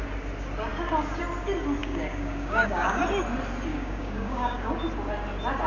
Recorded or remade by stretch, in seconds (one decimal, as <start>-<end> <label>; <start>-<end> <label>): 0.0-1.8 recorded; 1.8-3.0 remade; 3.0-3.7 recorded; 3.7-4.7 remade; 4.7-5.7 recorded